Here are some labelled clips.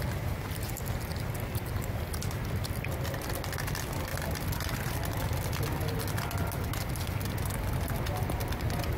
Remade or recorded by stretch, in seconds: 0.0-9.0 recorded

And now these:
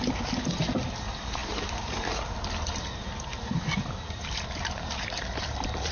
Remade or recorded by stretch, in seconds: 0.0-5.9 remade

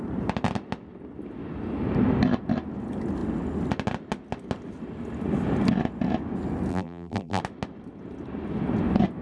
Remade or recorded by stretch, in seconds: 0.0-6.7 recorded; 6.7-7.4 remade; 7.4-9.2 recorded

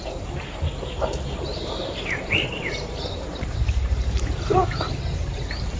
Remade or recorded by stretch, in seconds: 0.0-1.5 recorded; 1.5-5.0 remade; 5.0-5.8 recorded

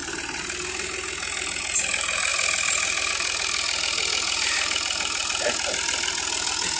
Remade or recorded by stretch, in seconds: 0.0-2.3 recorded; 2.3-3.1 remade; 3.1-6.8 recorded

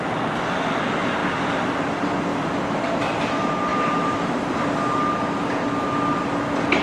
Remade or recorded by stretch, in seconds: 0.0-3.7 recorded; 3.7-4.4 remade; 4.4-6.8 recorded